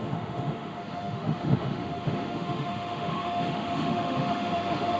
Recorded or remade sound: remade